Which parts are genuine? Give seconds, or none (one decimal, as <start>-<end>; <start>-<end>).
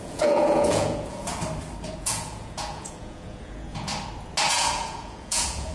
1.3-2.0; 3.9-4.5